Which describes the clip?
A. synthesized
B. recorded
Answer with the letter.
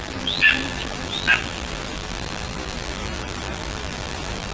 A